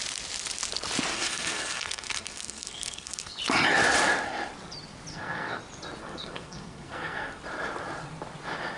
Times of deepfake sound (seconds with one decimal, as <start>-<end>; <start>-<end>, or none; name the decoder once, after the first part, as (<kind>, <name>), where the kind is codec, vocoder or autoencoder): 1.1-3.4 (codec, SNAC); 5.1-5.6; 6.0-7.4